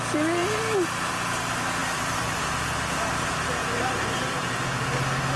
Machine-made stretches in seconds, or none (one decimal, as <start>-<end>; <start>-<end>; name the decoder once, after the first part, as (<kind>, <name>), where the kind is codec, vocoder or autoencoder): 0.4-1.1 (vocoder, BigVGAN v2); 1.8-2.4; 3.6-4.4